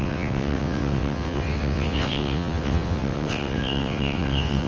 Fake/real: fake